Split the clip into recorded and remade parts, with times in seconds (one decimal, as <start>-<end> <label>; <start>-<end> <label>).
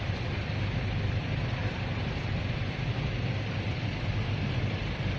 0.0-5.2 remade